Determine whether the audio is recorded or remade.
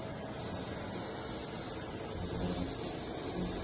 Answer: recorded